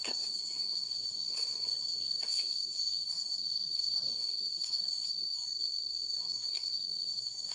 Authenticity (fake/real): fake